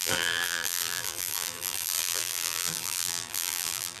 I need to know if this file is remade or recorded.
remade